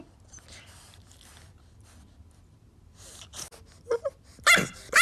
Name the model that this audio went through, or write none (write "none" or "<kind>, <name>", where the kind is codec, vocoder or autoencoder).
none